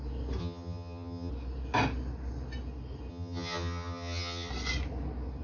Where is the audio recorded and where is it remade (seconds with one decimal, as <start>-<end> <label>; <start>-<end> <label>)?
0.0-0.4 recorded; 0.4-1.3 remade; 1.3-3.1 recorded; 3.1-4.5 remade; 4.5-5.4 recorded